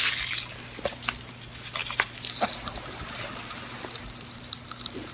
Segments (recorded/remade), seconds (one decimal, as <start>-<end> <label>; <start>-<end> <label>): 0.0-1.8 recorded; 1.8-5.1 remade